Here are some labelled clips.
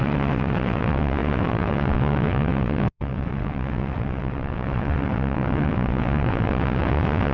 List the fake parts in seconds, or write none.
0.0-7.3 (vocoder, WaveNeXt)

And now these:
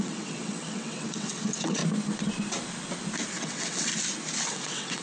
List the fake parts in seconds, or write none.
0.0-1.8 (vocoder, WaveNeXt); 3.4-3.9; 4.4-5.0

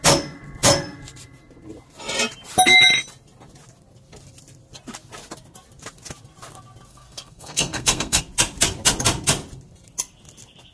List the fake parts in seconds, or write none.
6.9-8.2 (codec, SNAC)

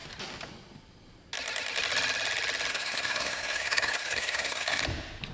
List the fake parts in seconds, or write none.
2.7-4.8 (codec, SNAC)

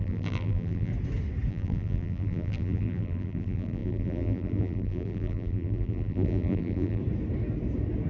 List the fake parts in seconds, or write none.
0.0-0.9 (vocoder, BigVGAN v2); 1.5-7.0